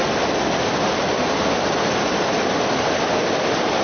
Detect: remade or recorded recorded